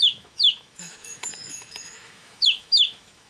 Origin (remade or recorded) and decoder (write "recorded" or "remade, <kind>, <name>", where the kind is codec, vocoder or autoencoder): remade, autoencoder, DAC-VAE